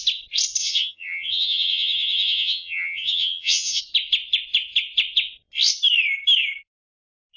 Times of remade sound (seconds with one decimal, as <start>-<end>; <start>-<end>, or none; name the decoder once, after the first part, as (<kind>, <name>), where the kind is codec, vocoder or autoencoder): 0.6-3.8 (vocoder, HiFi-GAN)